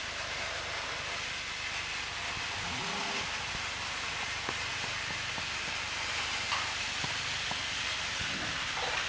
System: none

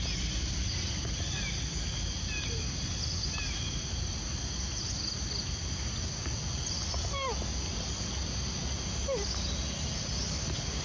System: none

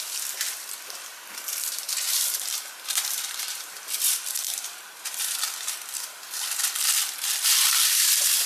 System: vocoder, BigVGAN v2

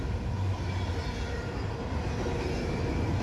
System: none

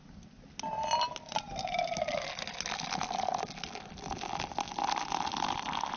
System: none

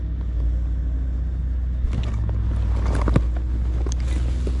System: none